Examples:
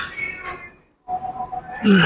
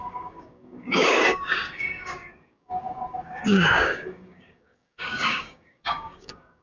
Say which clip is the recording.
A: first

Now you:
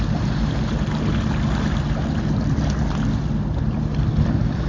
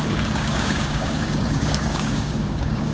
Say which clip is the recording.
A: first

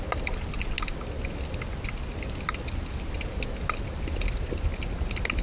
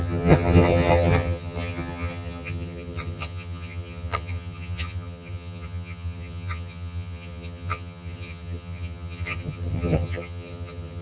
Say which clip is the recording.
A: first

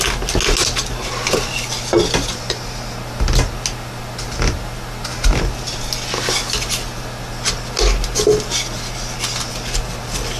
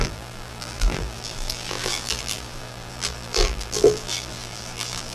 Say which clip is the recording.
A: first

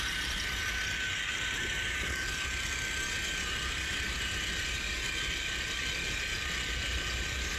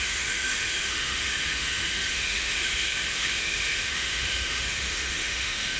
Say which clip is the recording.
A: first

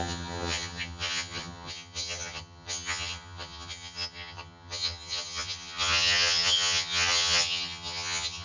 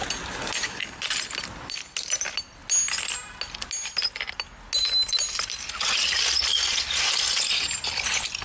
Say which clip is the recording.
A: second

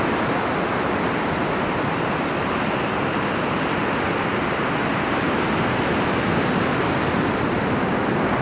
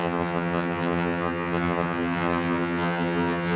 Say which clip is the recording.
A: first